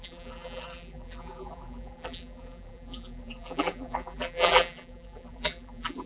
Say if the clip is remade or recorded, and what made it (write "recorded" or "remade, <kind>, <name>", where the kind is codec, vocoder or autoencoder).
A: remade, vocoder, BigVGAN v2